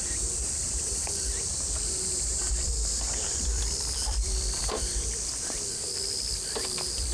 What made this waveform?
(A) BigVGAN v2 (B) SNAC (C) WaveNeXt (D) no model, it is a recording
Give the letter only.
A